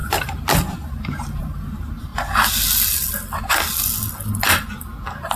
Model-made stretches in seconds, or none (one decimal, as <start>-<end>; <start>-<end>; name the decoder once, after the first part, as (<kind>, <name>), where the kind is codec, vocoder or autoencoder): 0.0-2.1 (vocoder, BigVGAN v2)